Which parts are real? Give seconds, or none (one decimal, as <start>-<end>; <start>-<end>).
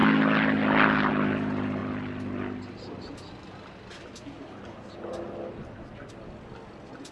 0.0-7.1